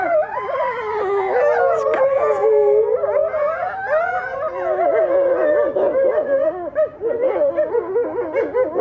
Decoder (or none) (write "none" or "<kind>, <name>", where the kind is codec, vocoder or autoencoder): none